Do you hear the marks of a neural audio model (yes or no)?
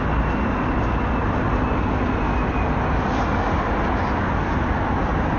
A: no